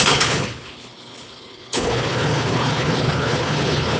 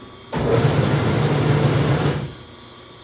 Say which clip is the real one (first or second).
second